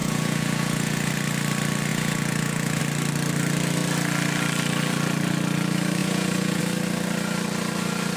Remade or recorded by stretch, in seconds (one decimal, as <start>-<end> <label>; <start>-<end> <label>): 0.0-1.1 remade; 1.1-1.9 recorded; 1.9-2.8 remade; 2.8-6.0 recorded; 6.0-6.6 remade; 6.6-8.2 recorded